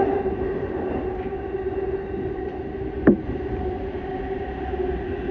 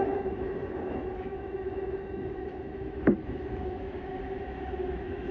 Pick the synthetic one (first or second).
second